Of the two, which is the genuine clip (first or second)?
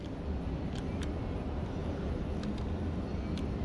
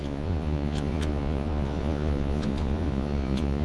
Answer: first